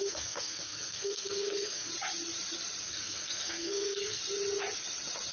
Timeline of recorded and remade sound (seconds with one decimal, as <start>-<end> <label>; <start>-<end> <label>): 0.0-1.9 remade; 1.9-2.8 recorded; 2.8-4.2 remade; 4.2-5.3 recorded